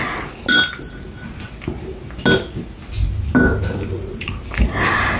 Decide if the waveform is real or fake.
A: real